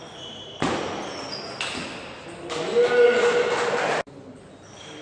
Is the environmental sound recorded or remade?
recorded